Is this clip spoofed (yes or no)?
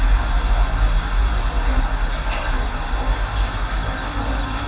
no